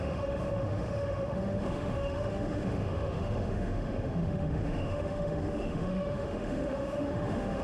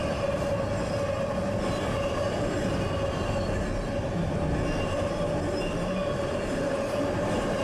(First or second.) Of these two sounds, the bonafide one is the second